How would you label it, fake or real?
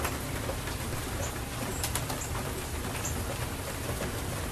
real